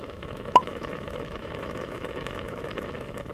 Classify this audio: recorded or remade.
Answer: remade